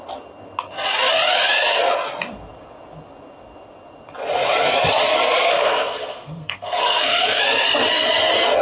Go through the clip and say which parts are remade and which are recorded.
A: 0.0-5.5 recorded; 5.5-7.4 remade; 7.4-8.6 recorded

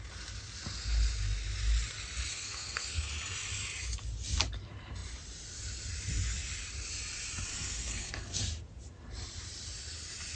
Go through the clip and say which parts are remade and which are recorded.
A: 0.0-2.3 recorded; 2.3-3.1 remade; 3.1-7.5 recorded; 7.5-8.4 remade; 8.4-10.4 recorded

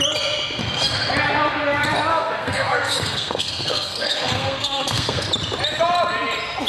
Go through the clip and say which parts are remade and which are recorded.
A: 0.0-0.6 recorded; 0.6-1.1 remade; 1.1-2.1 recorded; 2.1-5.3 remade; 5.3-6.7 recorded